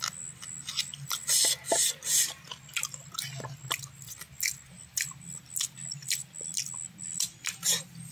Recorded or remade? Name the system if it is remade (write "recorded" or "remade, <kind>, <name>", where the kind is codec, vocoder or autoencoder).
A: recorded